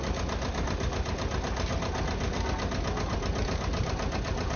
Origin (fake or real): real